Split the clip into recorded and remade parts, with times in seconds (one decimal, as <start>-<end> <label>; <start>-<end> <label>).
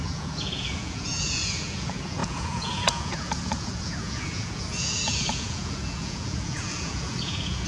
0.0-7.7 remade